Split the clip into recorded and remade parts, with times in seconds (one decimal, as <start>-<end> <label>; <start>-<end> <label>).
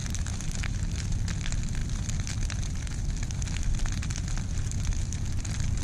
0.0-1.3 remade; 1.3-5.8 recorded